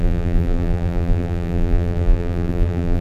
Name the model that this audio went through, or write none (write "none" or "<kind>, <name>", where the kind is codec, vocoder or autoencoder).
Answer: vocoder, BigVGAN v2